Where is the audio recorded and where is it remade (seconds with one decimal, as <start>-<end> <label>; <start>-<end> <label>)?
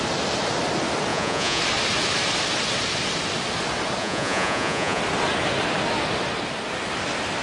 0.0-1.1 recorded; 1.1-1.6 remade; 1.6-4.0 recorded; 4.0-5.0 remade; 5.0-7.4 recorded